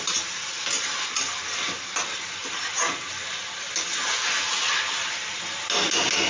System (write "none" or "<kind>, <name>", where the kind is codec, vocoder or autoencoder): none